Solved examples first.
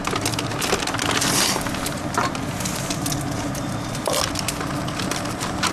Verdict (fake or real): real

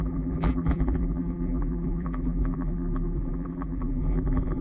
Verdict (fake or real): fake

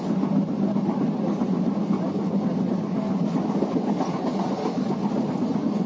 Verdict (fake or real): real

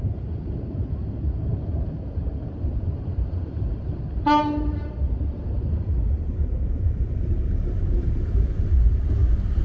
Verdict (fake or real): fake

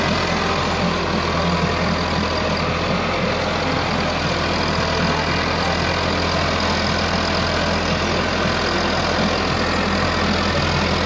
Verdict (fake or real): real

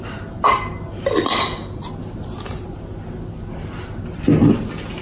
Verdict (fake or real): real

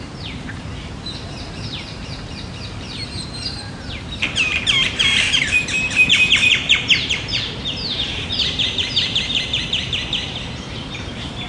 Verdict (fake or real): fake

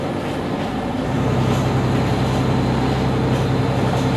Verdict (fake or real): real